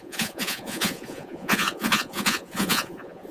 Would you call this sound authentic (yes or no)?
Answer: no